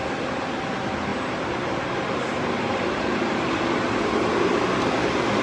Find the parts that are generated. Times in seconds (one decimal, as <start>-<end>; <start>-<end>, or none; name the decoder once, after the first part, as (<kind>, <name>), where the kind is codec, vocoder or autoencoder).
none